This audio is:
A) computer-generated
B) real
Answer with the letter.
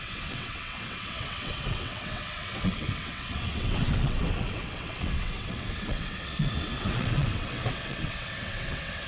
A